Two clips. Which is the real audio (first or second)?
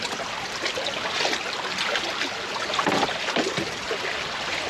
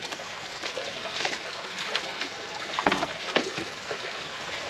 first